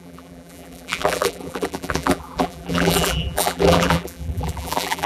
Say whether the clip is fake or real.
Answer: fake